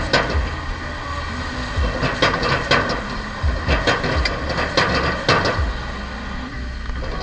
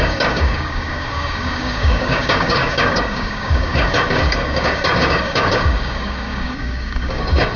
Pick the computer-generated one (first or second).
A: second